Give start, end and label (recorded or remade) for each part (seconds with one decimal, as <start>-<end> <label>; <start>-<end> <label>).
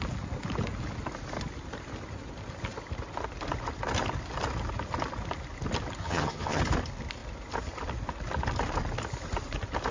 0.0-6.0 recorded; 6.0-6.6 remade; 6.6-9.9 recorded